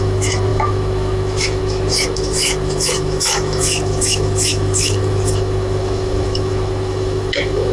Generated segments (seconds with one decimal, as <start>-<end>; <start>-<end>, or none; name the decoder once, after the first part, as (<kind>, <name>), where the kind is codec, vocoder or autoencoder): 0.0-7.7 (autoencoder, DAC-VAE)

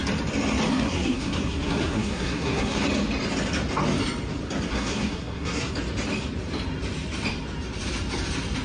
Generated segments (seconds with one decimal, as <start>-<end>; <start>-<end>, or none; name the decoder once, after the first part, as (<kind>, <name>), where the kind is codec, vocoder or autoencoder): 0.7-2.8 (codec, SNAC); 4.7-5.7

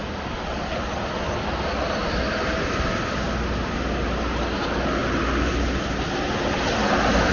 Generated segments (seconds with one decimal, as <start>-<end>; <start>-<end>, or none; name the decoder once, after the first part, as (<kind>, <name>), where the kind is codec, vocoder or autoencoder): none

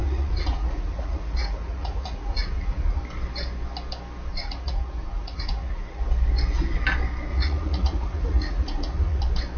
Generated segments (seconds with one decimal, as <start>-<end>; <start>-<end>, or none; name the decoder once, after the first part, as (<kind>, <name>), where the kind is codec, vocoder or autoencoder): 0.0-3.0 (vocoder, Vocos); 4.3-6.0; 7.3-9.2

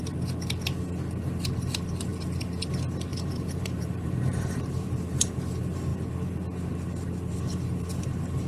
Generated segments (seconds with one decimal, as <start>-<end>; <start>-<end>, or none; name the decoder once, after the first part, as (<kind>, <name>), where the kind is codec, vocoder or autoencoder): 3.1-5.4 (vocoder, BigVGAN v2)

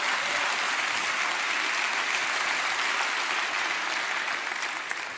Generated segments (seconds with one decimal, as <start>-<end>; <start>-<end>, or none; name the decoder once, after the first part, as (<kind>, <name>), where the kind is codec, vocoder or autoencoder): none